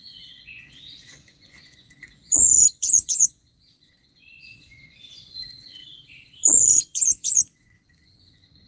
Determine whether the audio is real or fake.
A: fake